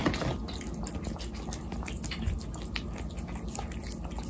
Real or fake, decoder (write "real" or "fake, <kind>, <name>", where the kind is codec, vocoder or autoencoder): real